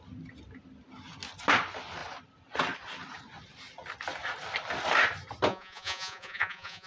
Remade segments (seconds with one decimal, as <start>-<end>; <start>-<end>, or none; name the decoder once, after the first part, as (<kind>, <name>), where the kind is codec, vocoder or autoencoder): 5.5-6.9 (vocoder, Vocos)